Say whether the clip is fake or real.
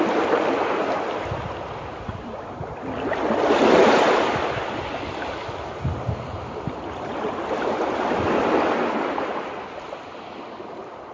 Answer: real